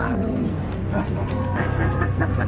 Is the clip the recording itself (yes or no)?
no